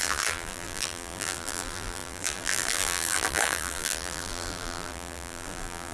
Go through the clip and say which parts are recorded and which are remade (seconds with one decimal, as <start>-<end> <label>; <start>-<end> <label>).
0.0-5.9 remade